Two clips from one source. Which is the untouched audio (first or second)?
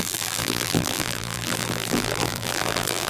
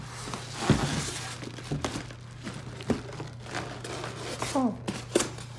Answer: second